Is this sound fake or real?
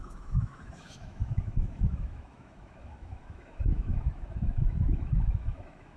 fake